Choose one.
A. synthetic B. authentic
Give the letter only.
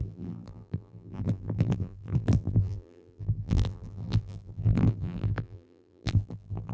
A